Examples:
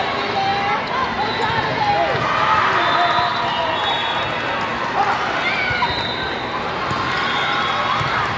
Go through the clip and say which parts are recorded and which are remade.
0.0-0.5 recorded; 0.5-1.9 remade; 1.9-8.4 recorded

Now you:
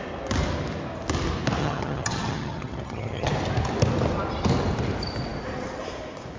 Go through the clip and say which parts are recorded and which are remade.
0.0-1.6 recorded; 1.6-3.3 remade; 3.3-6.4 recorded

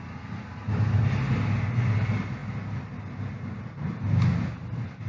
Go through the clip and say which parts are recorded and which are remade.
0.0-5.1 recorded

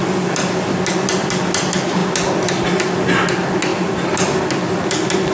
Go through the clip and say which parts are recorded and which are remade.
0.0-5.3 recorded

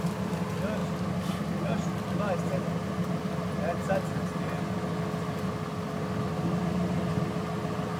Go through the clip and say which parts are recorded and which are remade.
0.0-8.0 recorded

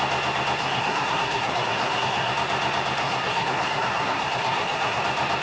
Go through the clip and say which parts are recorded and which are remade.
0.0-0.6 recorded; 0.6-2.3 remade; 2.3-3.0 recorded; 3.0-5.0 remade; 5.0-5.4 recorded

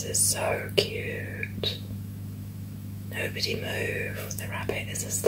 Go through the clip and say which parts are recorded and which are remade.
0.0-1.7 recorded; 1.7-4.5 remade; 4.5-5.3 recorded